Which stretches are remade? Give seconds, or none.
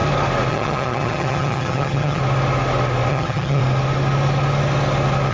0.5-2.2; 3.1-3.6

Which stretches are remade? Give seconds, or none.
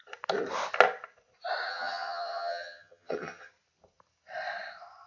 1.7-3.5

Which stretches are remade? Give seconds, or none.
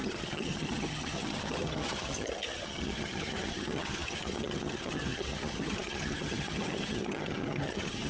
0.0-8.1